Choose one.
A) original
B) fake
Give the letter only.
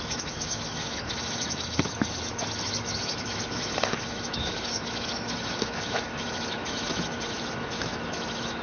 B